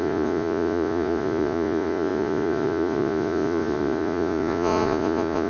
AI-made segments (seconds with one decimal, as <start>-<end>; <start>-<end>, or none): 0.0-5.5